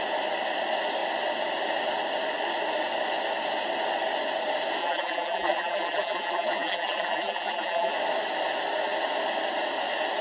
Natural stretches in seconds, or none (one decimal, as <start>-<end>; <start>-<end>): 0.0-4.8; 7.9-10.2